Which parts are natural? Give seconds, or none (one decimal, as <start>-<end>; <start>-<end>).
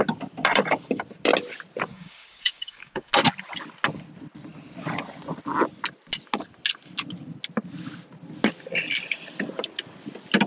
0.0-1.9; 3.1-10.5